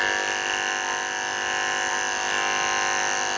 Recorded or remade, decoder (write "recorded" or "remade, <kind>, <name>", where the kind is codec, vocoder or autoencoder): recorded